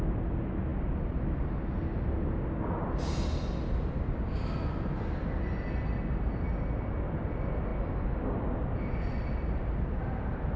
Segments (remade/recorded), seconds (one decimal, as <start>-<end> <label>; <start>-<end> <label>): 0.0-10.6 recorded